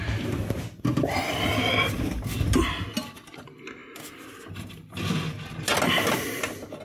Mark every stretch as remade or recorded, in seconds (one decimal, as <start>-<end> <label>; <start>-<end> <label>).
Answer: 0.0-6.8 recorded